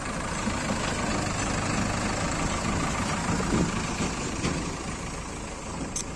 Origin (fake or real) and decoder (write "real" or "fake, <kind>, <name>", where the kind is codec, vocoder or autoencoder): real